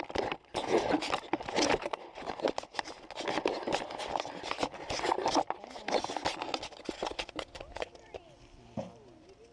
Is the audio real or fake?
real